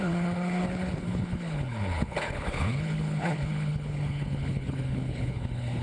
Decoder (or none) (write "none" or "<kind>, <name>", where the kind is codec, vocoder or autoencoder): codec, HILCodec